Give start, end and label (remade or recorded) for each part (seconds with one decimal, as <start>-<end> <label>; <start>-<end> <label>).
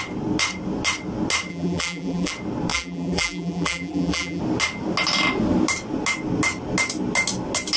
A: 0.0-1.5 recorded; 1.5-2.3 remade; 2.3-2.7 recorded; 2.7-4.4 remade; 4.4-7.8 recorded